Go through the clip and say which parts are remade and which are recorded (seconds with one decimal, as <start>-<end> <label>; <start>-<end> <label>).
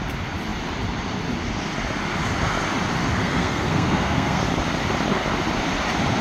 0.0-3.2 recorded; 3.2-4.4 remade; 4.4-6.2 recorded